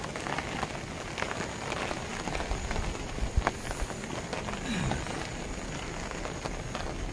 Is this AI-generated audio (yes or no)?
no